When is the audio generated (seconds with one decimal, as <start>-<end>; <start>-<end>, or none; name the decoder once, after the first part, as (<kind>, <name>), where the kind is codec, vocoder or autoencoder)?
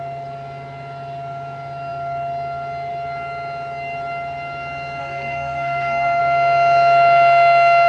5.0-6.2 (codec, SNAC)